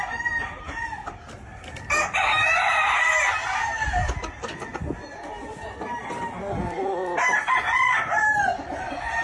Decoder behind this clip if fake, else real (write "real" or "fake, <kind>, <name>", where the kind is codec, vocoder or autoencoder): real